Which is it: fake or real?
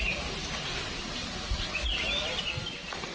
real